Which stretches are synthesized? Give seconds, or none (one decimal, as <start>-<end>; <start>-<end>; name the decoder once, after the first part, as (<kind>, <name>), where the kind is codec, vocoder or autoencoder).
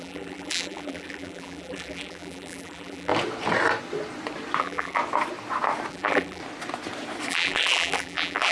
0.0-3.1 (vocoder, BigVGAN v2); 4.6-5.0; 5.9-6.4; 7.3-8.5